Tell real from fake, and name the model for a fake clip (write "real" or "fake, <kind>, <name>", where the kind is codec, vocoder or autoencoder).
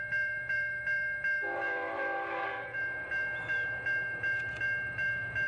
fake, vocoder, BigVGAN v2